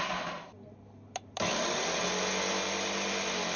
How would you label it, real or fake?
real